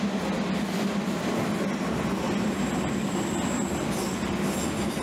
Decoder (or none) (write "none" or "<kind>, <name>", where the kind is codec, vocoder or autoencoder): none